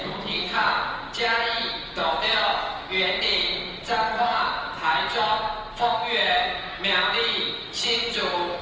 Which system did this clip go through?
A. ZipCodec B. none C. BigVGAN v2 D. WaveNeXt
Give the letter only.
B